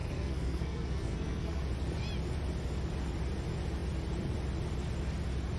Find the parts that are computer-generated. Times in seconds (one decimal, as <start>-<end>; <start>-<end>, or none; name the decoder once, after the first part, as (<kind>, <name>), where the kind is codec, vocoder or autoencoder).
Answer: 0.0-1.6 (codec, SNAC)